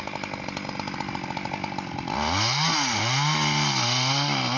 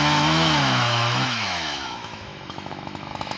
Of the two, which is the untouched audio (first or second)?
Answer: first